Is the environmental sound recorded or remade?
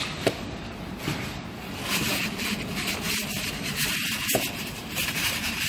remade